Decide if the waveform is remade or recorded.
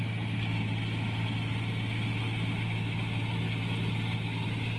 recorded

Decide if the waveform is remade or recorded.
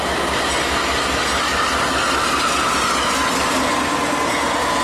recorded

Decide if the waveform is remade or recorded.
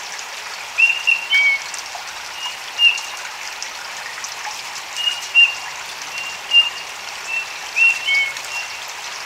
recorded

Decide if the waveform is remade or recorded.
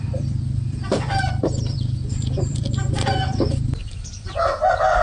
remade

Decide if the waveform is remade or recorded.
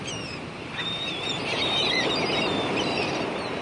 remade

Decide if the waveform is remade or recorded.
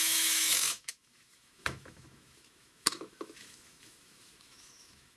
remade